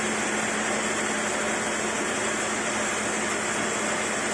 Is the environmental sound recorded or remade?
recorded